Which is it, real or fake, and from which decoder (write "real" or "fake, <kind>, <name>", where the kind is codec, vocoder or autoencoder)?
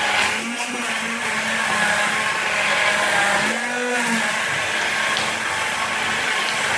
real